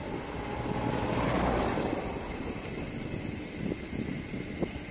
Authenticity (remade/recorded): recorded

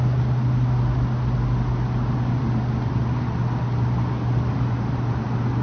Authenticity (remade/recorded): recorded